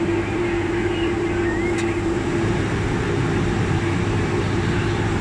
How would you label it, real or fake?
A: fake